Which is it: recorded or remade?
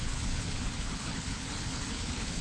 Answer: remade